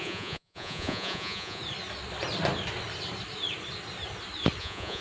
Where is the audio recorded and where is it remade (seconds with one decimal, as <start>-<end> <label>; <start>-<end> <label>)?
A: 0.0-1.6 remade; 1.6-4.6 recorded; 4.6-5.0 remade